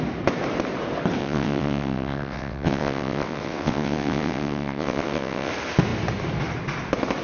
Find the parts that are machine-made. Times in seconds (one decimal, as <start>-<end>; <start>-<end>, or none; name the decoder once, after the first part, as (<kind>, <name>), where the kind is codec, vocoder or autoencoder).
1.2-5.5 (vocoder, WaveNeXt)